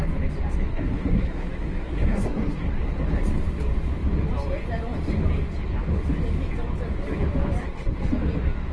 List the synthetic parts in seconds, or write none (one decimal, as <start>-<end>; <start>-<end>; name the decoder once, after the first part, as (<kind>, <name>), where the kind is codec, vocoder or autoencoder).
0.7-2.7 (codec, SNAC); 7.6-8.1